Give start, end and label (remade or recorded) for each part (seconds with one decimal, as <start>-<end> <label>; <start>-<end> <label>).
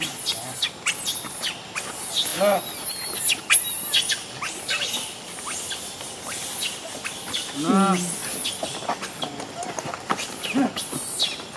0.0-11.6 recorded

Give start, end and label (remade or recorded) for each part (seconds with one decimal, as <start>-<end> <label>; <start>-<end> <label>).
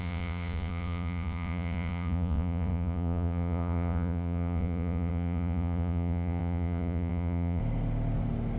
0.0-7.6 remade; 7.6-8.6 recorded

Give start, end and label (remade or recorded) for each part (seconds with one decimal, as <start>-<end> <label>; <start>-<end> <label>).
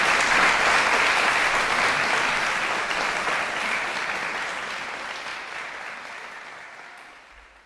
0.0-5.3 recorded; 5.3-6.0 remade; 6.0-7.7 recorded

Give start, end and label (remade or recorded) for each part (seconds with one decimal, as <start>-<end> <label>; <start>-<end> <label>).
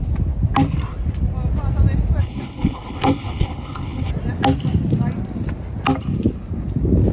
0.0-2.2 recorded; 2.2-4.1 remade; 4.1-7.1 recorded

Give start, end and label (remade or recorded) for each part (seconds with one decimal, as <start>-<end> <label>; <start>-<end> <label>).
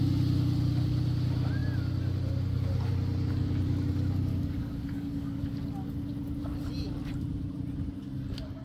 0.0-4.3 recorded; 4.3-5.4 remade; 5.4-8.6 recorded